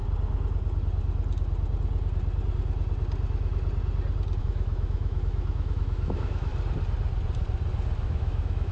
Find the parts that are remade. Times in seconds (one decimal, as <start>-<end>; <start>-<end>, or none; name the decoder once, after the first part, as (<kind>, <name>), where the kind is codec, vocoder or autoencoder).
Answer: 4.4-6.5 (autoencoder, DAC-VAE); 8.0-8.7